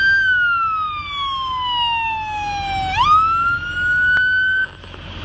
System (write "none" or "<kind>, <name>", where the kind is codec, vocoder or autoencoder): none